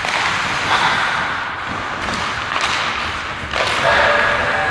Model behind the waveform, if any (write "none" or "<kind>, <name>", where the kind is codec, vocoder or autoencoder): none